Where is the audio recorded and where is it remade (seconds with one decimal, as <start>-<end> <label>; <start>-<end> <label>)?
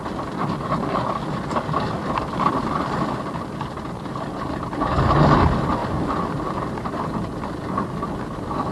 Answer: 0.0-8.7 recorded